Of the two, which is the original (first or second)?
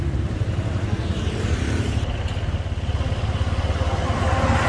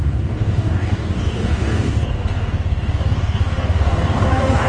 first